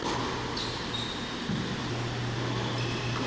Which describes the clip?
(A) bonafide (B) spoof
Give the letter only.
A